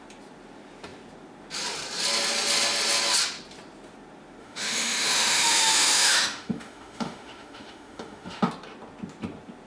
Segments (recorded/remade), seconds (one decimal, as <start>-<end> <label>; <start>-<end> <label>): 0.0-4.4 recorded; 4.4-8.5 remade; 8.5-9.7 recorded